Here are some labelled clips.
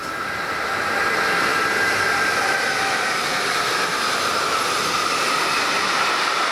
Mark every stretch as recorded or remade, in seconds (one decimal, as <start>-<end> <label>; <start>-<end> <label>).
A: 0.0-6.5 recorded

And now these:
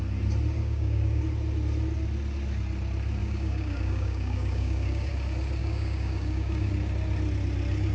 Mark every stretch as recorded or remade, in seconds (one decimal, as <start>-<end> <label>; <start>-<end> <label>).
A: 0.0-0.6 recorded; 0.6-1.2 remade; 1.2-3.2 recorded; 3.2-5.1 remade; 5.1-5.6 recorded; 5.6-6.7 remade; 6.7-7.9 recorded

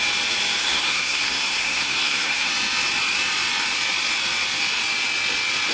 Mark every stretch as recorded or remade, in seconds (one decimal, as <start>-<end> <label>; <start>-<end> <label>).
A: 0.0-0.6 recorded; 0.6-2.5 remade; 2.5-5.7 recorded